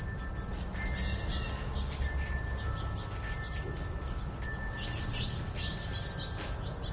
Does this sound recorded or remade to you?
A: recorded